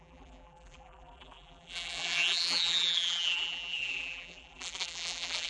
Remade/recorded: remade